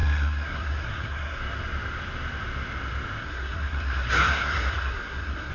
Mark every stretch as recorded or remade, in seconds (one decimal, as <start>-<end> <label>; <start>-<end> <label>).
0.0-1.4 remade; 1.4-3.2 recorded; 3.2-5.5 remade